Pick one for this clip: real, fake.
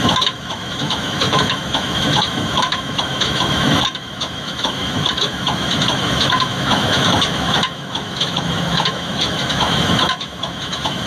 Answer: fake